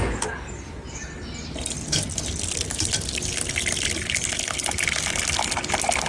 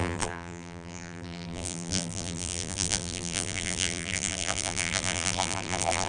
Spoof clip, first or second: second